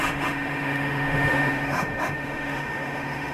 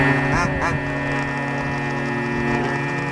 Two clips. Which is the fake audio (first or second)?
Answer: first